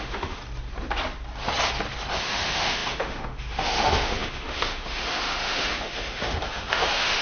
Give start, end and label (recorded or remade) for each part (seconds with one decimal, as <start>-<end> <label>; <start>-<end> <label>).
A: 0.0-0.4 remade; 0.4-2.2 recorded; 2.2-7.2 remade

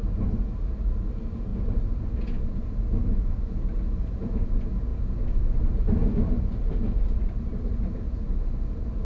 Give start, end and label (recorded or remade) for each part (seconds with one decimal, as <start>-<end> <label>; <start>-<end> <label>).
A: 0.0-9.0 recorded

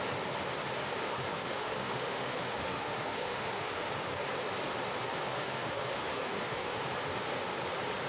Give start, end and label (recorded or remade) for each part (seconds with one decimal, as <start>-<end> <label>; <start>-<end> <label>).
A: 0.0-1.0 recorded; 1.0-3.9 remade; 3.9-5.3 recorded; 5.3-6.8 remade; 6.8-8.1 recorded

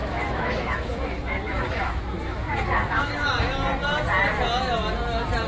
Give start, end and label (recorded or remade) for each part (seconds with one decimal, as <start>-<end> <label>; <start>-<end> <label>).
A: 0.0-3.3 remade; 3.3-5.5 recorded

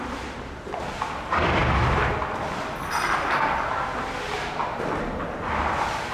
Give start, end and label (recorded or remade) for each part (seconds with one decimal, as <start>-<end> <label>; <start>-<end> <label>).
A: 0.0-6.1 recorded

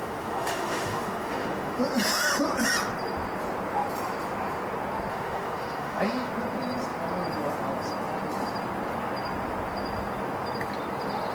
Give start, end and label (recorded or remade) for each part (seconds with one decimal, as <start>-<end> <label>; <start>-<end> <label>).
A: 0.0-1.8 remade; 1.8-5.1 recorded; 5.1-6.3 remade; 6.3-11.3 recorded

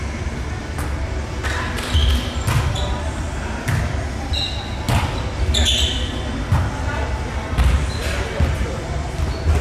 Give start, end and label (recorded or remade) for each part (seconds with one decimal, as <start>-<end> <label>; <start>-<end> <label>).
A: 0.0-9.6 recorded

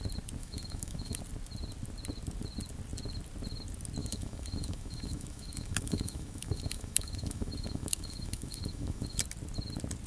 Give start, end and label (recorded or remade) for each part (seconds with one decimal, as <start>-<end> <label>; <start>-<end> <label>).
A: 0.0-0.4 recorded; 0.4-1.2 remade; 1.2-4.0 recorded; 4.0-9.2 remade; 9.2-10.1 recorded